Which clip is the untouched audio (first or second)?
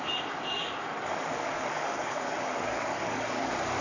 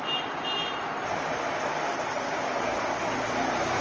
second